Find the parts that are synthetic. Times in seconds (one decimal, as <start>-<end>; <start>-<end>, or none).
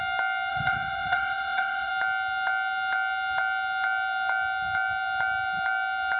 0.5-1.9